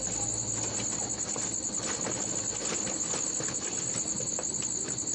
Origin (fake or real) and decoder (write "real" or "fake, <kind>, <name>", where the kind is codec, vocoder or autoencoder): real